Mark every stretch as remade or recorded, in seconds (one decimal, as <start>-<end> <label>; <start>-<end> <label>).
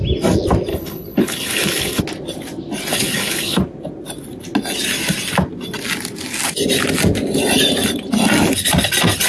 0.0-0.7 recorded; 0.7-2.0 remade; 2.0-2.9 recorded; 2.9-3.6 remade; 3.6-9.3 recorded